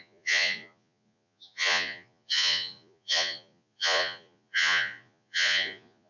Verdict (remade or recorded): remade